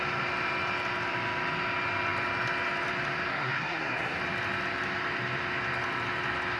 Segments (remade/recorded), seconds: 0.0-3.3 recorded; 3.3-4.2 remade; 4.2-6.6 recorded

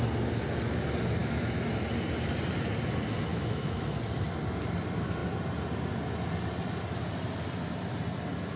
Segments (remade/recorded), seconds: 0.0-1.2 recorded; 1.2-1.7 remade; 1.7-3.3 recorded; 3.3-4.0 remade; 4.0-8.6 recorded